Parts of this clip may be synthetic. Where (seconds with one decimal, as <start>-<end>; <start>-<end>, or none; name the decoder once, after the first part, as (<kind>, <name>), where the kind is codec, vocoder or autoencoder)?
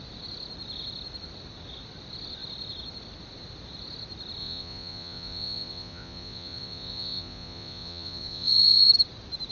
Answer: 4.4-8.9 (vocoder, Vocos)